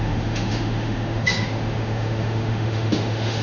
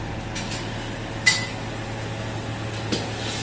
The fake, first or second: first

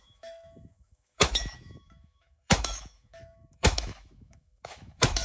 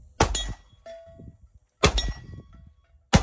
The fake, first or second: first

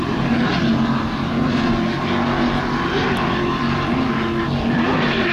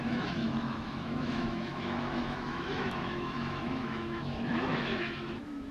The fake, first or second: second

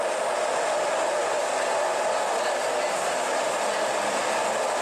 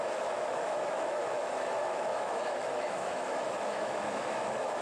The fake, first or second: second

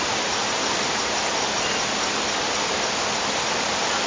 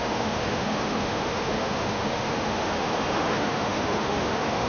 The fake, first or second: second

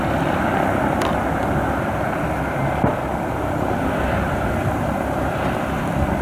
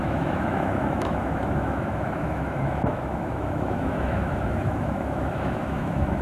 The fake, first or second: second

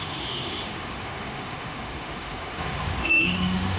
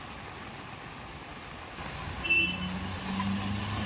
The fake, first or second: first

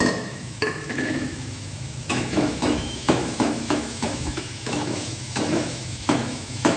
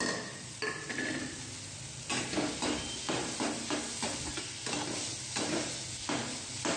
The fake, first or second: first